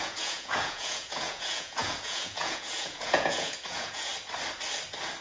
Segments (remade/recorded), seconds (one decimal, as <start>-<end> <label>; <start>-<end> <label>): 0.0-4.1 remade; 4.1-5.2 recorded